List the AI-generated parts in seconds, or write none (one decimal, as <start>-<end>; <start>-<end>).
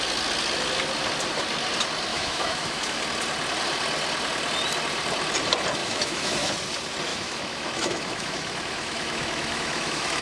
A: 2.1-3.0; 5.8-6.5; 7.1-10.2